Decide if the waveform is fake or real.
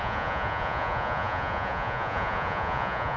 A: fake